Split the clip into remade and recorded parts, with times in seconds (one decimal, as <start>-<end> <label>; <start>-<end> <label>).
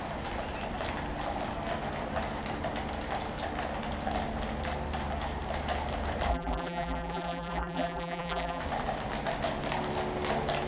0.0-6.3 recorded; 6.3-8.6 remade; 8.6-10.7 recorded